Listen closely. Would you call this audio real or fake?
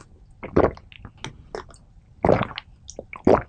real